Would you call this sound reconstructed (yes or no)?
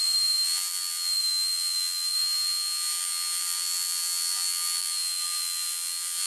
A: yes